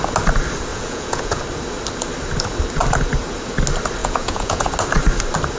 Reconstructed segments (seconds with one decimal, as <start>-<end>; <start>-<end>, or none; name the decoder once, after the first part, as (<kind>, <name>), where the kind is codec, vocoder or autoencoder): 0.7-1.4 (vocoder, Vocos); 4.0-4.7